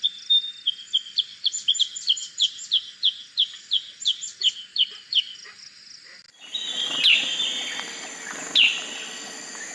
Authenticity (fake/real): real